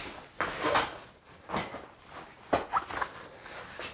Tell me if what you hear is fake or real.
real